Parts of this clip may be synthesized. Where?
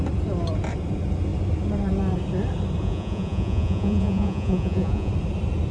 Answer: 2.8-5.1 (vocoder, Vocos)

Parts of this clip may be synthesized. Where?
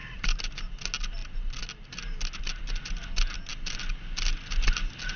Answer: none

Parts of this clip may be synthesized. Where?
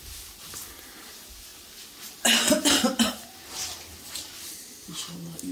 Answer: none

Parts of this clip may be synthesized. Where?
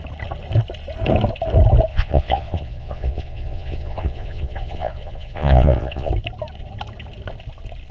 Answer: 1.9-6.1 (vocoder, Vocos)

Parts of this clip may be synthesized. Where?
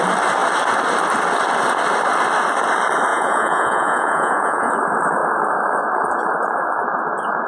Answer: 3.1-4.7 (vocoder, Vocos)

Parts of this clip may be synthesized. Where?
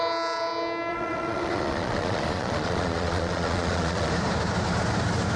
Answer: 0.9-4.1 (vocoder, Vocos)